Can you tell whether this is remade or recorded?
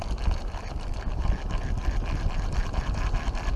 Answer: recorded